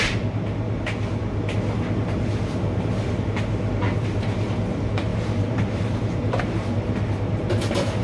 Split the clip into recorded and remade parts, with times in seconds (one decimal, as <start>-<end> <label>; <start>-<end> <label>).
0.0-5.1 recorded; 5.1-6.4 remade; 6.4-8.0 recorded